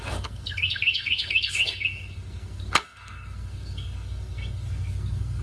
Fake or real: fake